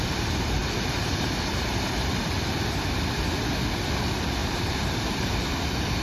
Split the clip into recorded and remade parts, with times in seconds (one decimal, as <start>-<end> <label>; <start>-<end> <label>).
0.0-0.6 recorded; 0.6-2.2 remade; 2.2-4.4 recorded; 4.4-5.3 remade; 5.3-6.0 recorded